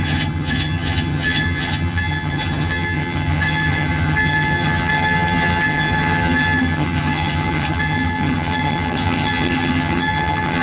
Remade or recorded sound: remade